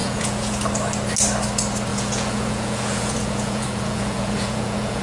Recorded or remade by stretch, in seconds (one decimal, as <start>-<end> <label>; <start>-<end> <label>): 0.0-0.5 remade; 0.5-1.9 recorded; 1.9-5.0 remade